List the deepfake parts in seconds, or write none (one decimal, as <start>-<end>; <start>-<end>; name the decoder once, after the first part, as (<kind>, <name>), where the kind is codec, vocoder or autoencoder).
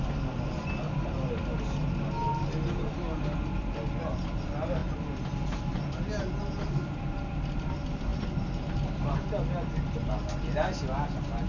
none